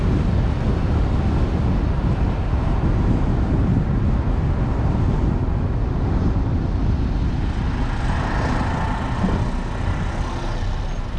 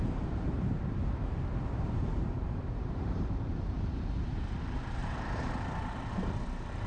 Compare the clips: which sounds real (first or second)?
first